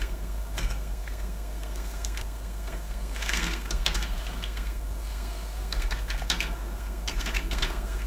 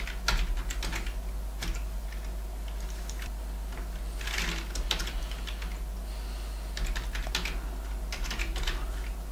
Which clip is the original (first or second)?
second